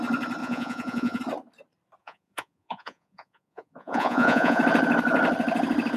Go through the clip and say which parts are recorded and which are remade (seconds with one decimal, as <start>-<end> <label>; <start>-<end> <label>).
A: 0.0-0.4 recorded; 0.4-1.2 remade; 1.2-2.0 recorded; 2.0-4.6 remade; 4.6-6.0 recorded